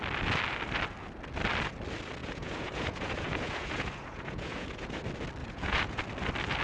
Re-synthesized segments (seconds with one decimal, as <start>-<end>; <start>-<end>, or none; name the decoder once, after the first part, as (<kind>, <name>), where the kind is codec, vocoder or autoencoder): 2.2-5.0 (vocoder, Vocos); 5.4-6.0